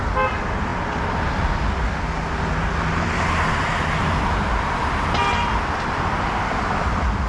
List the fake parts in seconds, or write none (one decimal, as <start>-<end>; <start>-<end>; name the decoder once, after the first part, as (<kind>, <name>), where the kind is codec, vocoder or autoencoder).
none

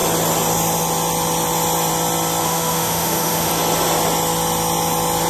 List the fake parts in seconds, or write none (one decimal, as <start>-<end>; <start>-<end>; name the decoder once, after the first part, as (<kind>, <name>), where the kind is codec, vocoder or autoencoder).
2.4-3.5 (autoencoder, DAC-VAE)